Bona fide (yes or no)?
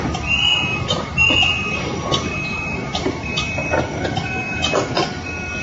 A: yes